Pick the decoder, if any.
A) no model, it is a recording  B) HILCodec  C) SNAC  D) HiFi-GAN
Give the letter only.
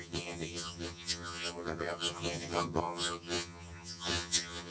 D